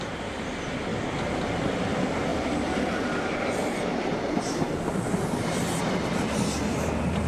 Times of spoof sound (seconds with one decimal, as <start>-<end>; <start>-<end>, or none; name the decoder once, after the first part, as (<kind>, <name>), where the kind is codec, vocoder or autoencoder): none